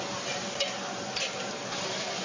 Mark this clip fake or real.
real